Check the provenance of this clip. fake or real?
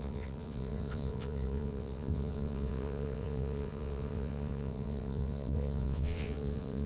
fake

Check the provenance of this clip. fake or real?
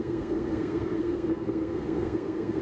fake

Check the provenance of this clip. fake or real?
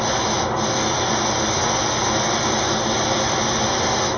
real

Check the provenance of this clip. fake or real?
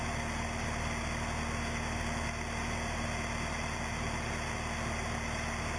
real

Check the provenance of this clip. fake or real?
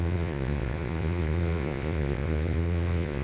fake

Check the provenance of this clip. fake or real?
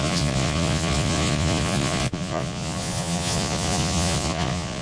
fake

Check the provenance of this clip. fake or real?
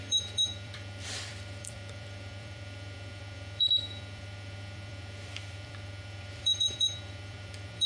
fake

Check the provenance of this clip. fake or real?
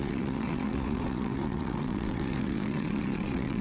fake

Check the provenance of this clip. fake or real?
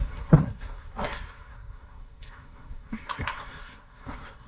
fake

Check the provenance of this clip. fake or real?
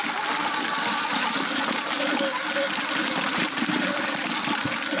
real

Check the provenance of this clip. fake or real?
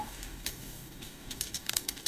fake